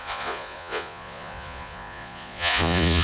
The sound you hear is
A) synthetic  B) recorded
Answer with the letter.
A